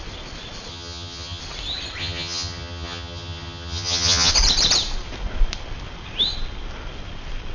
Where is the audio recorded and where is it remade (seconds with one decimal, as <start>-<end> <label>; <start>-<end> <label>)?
0.0-0.7 recorded; 0.7-1.4 remade; 1.4-2.0 recorded; 2.0-4.3 remade; 4.3-7.5 recorded

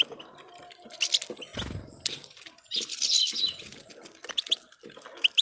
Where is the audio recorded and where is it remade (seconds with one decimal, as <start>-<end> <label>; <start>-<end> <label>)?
0.0-5.4 recorded

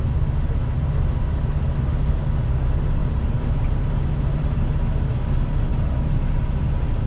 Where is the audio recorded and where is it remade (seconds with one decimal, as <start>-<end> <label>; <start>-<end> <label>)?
0.0-3.0 recorded; 3.0-4.6 remade; 4.6-7.1 recorded

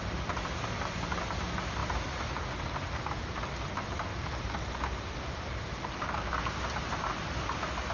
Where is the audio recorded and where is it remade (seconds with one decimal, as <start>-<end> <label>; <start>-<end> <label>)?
0.0-4.1 recorded; 4.1-5.9 remade; 5.9-7.9 recorded

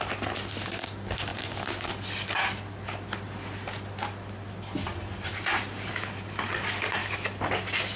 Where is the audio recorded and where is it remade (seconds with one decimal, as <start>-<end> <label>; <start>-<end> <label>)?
0.0-8.0 recorded

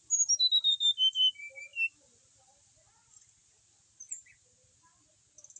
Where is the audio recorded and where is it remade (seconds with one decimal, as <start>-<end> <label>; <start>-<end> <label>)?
0.0-5.6 recorded